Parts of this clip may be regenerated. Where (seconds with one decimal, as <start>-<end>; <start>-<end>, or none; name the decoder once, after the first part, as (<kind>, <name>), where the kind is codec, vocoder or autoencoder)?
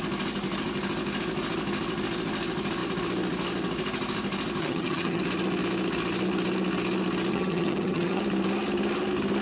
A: 4.6-5.2 (vocoder, HiFi-GAN); 7.3-8.2